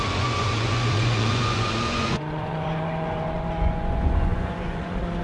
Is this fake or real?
fake